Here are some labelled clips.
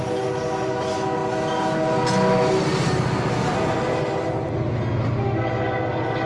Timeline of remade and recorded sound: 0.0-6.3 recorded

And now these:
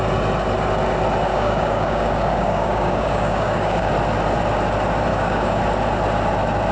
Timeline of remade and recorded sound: 0.0-1.3 recorded; 1.3-3.9 remade; 3.9-5.1 recorded; 5.1-5.6 remade; 5.6-6.7 recorded

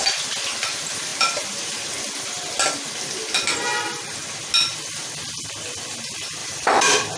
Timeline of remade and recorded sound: 0.0-6.4 recorded; 6.4-7.2 remade

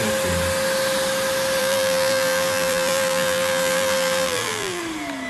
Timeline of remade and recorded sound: 0.0-1.6 recorded; 1.6-4.8 remade; 4.8-5.3 recorded